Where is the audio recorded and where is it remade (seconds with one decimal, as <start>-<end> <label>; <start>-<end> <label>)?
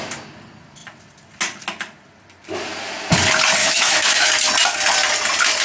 0.0-3.6 recorded; 3.6-4.3 remade; 4.3-5.6 recorded